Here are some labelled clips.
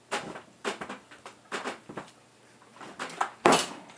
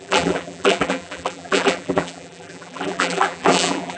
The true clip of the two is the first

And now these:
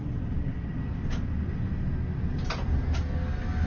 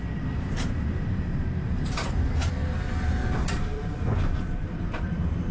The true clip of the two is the first